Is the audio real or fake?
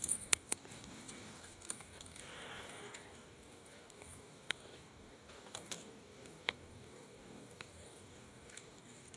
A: fake